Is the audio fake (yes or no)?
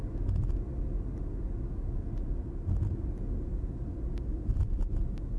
no